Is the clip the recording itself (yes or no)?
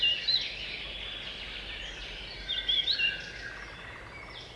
yes